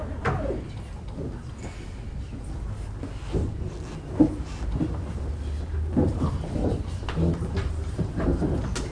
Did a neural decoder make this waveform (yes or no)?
no